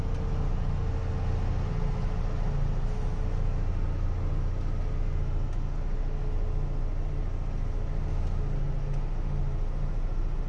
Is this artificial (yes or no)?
no